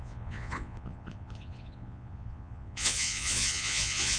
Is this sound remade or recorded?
remade